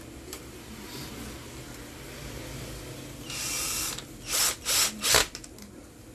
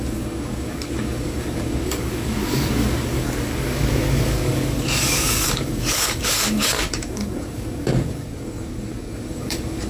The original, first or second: first